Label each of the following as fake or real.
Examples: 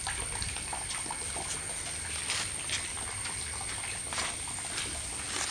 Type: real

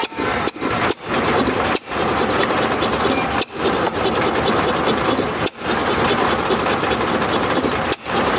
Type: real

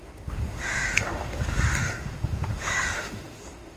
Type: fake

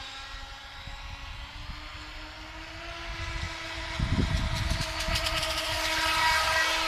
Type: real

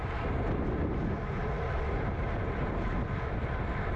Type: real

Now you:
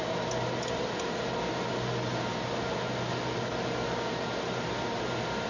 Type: real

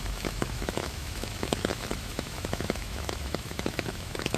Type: fake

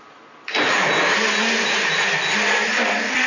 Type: real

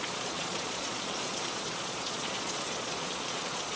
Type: fake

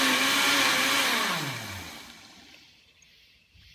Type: fake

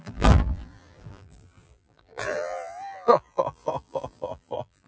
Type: fake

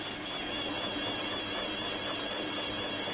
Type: real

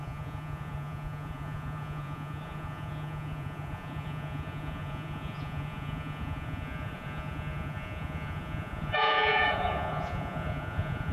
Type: fake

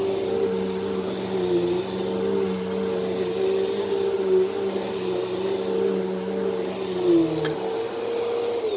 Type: real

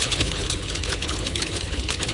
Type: fake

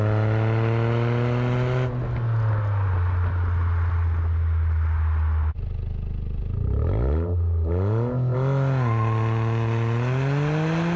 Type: real